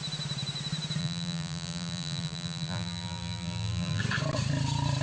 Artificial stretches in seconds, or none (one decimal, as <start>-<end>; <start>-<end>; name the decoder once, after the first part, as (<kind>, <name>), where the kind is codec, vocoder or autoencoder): 1.0-4.0 (vocoder, BigVGAN v2)